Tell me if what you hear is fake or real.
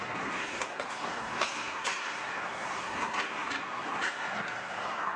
fake